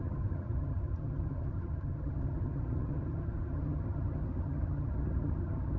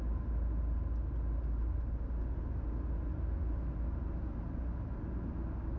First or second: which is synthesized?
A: first